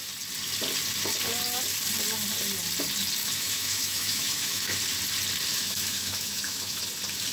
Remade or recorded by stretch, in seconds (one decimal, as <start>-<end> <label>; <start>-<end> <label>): 0.0-3.2 recorded; 3.2-4.8 remade; 4.8-5.5 recorded; 5.5-6.8 remade; 6.8-7.3 recorded